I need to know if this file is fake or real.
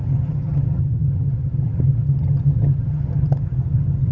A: fake